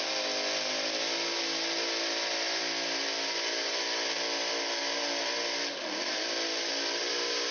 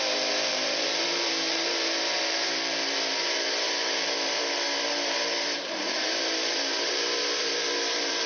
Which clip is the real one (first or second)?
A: first